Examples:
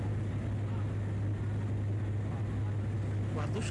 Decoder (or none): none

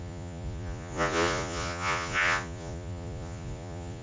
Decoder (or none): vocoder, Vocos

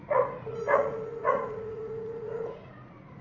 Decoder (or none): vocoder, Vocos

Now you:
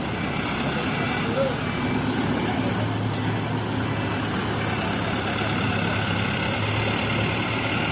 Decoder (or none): none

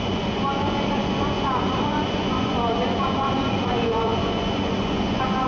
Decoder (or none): vocoder, Vocos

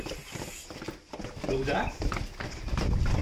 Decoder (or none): none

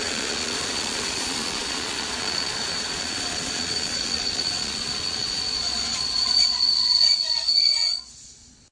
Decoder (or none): vocoder, Vocos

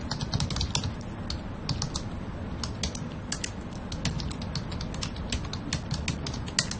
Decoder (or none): none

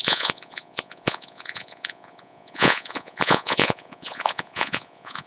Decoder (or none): vocoder, Vocos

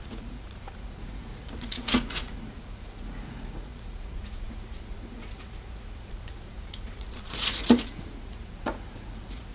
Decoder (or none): vocoder, Vocos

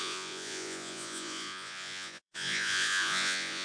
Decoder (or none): vocoder, Vocos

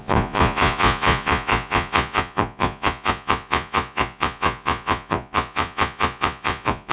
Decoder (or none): vocoder, Vocos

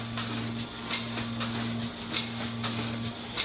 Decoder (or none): none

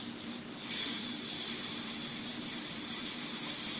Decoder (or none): none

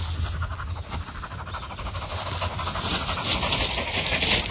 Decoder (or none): none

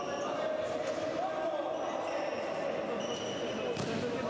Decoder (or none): none